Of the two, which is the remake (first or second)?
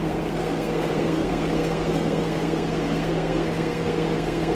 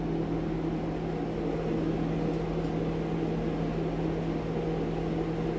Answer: first